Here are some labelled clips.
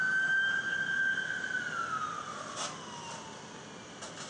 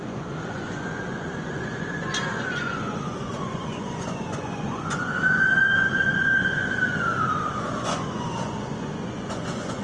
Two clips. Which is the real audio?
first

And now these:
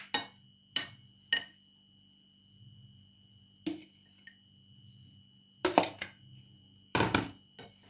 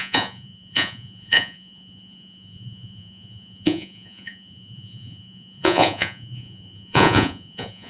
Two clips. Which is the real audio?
first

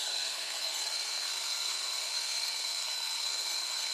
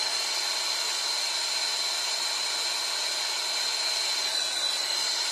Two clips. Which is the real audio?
second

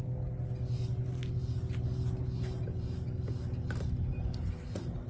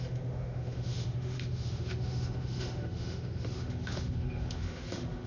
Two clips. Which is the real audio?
first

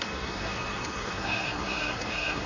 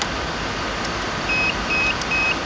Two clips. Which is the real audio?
second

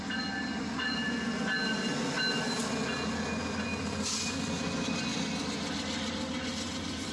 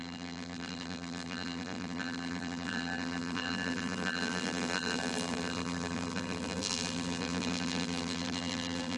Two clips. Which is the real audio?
first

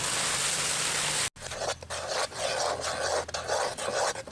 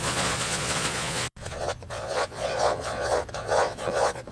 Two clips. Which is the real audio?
first